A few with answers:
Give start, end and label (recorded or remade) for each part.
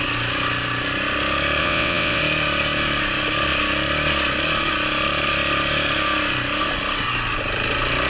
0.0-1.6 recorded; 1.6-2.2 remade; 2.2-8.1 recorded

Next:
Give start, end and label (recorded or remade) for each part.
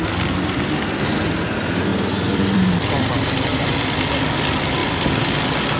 0.0-1.9 recorded; 1.9-3.5 remade; 3.5-5.8 recorded